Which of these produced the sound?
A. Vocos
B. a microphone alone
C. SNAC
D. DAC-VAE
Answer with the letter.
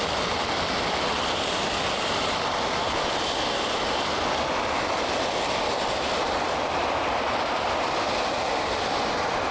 B